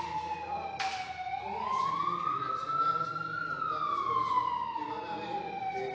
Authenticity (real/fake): real